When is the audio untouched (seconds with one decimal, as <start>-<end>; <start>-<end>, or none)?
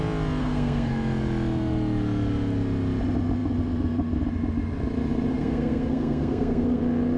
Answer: 0.0-0.4; 0.9-5.3; 6.8-7.2